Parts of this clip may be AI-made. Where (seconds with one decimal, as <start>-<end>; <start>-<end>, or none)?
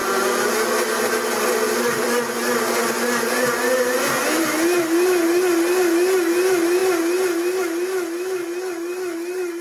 none